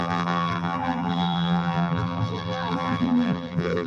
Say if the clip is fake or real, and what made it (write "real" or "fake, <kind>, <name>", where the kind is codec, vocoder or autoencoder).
fake, vocoder, BigVGAN v2